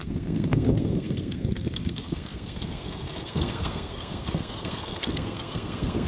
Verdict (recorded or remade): remade